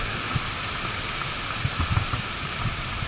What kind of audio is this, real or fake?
real